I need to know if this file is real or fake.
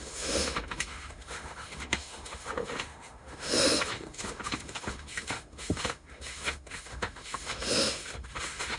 fake